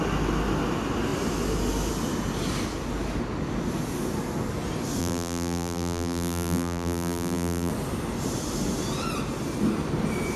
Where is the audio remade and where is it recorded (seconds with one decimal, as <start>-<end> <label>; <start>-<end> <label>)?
0.0-5.0 recorded; 5.0-7.7 remade; 7.7-10.4 recorded